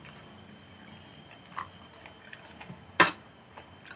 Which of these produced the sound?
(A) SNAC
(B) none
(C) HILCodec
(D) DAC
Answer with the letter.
B